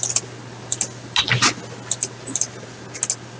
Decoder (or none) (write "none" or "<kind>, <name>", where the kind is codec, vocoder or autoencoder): none